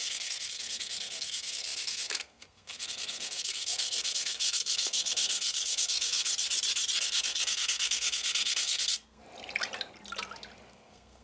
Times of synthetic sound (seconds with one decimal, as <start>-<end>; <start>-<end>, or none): 0.0-6.3; 7.0-9.2; 10.7-11.2